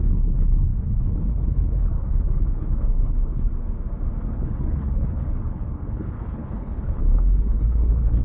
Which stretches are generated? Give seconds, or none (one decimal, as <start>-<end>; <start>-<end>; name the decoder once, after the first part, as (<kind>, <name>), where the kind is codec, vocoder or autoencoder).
0.0-3.5 (codec, HILCodec); 4.2-8.2